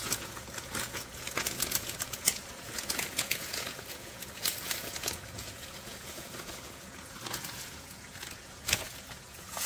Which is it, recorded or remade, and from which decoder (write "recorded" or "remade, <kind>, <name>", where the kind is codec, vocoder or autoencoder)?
remade, vocoder, Vocos